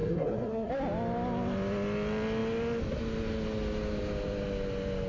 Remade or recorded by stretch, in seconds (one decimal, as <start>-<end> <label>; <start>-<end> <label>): 0.0-0.7 remade; 0.7-5.1 recorded